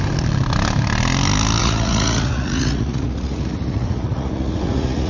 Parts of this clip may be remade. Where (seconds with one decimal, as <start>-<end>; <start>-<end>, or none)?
1.6-5.1